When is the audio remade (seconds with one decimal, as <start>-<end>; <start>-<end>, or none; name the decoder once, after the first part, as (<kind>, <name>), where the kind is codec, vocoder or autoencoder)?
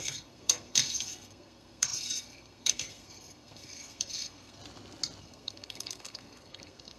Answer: 0.0-4.6 (codec, SNAC); 5.2-7.0